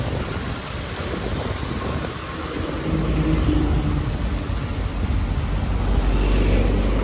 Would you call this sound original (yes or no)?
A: yes